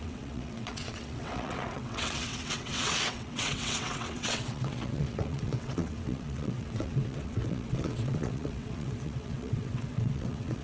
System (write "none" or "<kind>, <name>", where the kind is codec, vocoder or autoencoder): vocoder, WaveNeXt